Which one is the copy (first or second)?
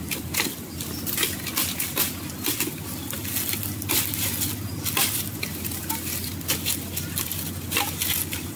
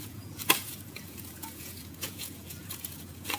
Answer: second